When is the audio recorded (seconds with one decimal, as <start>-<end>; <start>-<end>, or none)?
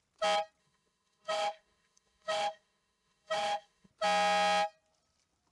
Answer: 0.0-0.6; 3.9-5.5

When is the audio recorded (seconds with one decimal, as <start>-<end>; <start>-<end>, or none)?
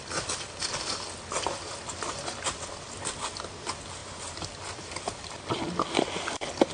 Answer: 0.0-6.7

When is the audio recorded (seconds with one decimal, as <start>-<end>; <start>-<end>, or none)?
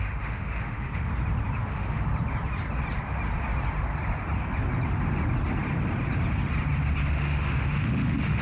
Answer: 1.1-1.7; 2.1-7.1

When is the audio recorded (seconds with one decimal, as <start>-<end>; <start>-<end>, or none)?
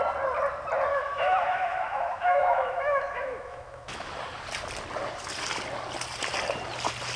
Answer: 0.0-0.9; 4.1-7.2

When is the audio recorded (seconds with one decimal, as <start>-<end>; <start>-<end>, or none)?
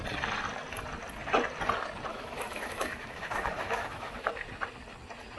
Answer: 0.0-2.1; 4.3-5.4